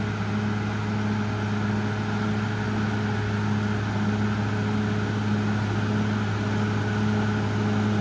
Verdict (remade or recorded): recorded